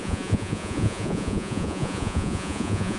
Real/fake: fake